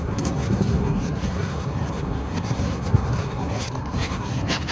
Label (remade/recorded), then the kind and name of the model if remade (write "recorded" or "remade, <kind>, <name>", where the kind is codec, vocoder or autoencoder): remade, codec, SNAC